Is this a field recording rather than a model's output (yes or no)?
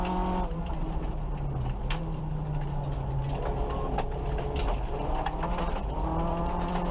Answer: yes